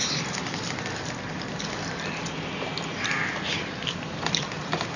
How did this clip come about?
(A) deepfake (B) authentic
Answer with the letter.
A